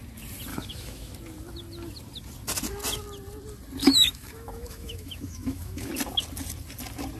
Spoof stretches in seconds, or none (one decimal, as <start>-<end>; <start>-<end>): 0.5-1.1; 3.8-5.9